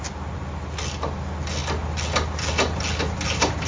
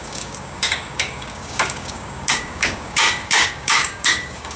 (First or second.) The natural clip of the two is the first